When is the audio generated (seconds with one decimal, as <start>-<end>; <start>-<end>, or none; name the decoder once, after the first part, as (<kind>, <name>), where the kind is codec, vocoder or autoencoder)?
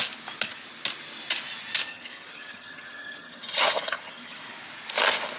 1.9-4.4 (vocoder, HiFi-GAN)